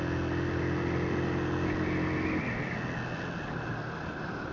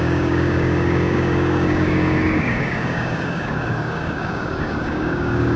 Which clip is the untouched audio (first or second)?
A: first